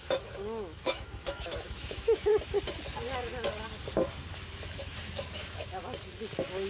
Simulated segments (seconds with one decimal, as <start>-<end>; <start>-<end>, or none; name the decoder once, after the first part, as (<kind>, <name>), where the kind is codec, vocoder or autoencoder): 0.0-2.3 (autoencoder, DAC-VAE); 4.7-5.8